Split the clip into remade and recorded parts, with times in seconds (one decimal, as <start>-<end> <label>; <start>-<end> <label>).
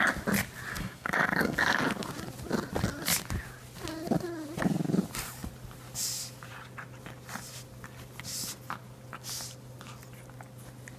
0.0-0.7 recorded; 0.7-1.8 remade; 1.8-11.0 recorded